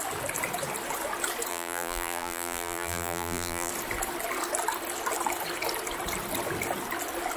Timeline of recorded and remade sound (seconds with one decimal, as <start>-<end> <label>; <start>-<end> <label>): 0.0-1.5 recorded; 1.5-3.7 remade; 3.7-7.4 recorded